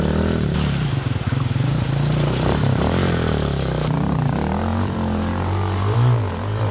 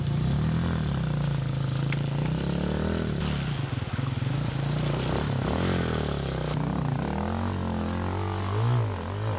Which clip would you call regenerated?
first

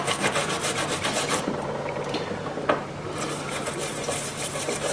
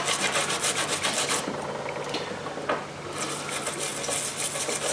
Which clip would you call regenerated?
first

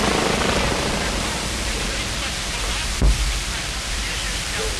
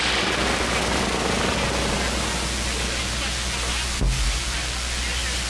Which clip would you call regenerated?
first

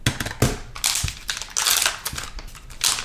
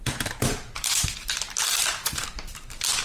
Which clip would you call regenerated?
second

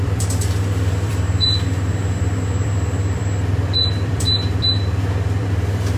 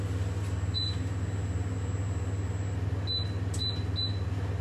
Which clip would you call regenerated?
first